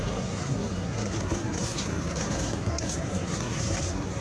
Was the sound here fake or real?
fake